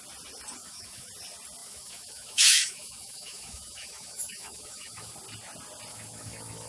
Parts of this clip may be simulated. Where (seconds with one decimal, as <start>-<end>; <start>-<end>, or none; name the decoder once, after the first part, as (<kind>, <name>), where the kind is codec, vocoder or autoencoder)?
0.6-1.1 (autoencoder, DAC-VAE); 1.6-5.1; 5.9-6.7